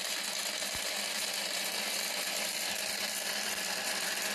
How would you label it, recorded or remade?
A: recorded